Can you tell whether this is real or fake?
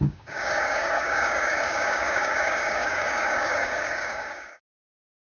fake